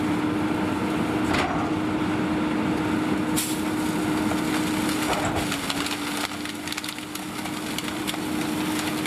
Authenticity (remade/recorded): recorded